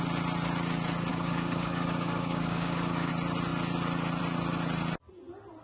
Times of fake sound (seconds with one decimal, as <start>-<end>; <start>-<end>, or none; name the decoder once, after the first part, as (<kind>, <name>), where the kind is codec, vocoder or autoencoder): 1.1-3.1 (codec, DAC)